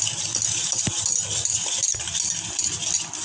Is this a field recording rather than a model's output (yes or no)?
yes